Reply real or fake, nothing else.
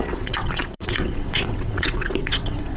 fake